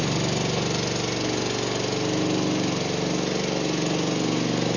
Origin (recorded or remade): recorded